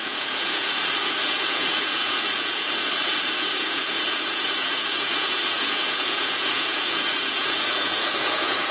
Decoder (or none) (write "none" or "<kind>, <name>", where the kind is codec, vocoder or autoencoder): vocoder, Vocos